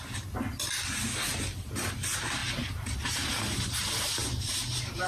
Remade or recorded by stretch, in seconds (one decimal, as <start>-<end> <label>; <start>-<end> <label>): 0.0-4.2 recorded; 4.2-5.1 remade